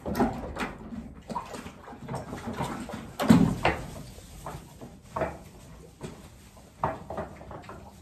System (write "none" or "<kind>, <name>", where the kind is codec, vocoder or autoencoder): none